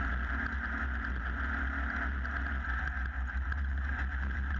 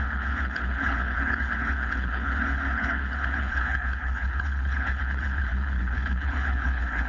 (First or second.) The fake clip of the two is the second